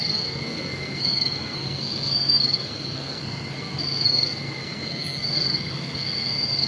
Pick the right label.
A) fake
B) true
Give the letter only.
A